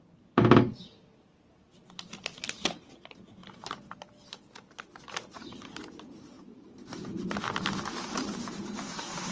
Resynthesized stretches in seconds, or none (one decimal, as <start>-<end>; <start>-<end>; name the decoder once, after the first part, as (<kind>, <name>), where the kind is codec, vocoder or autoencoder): 3.4-3.9 (vocoder, BigVGAN v2); 5.3-6.9